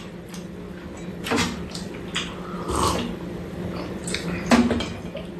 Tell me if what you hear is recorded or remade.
recorded